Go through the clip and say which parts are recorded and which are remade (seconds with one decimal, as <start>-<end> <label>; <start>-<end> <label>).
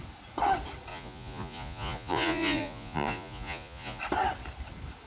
0.0-0.9 recorded; 0.9-4.0 remade; 4.0-5.1 recorded